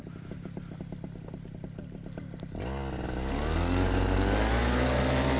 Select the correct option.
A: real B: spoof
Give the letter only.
A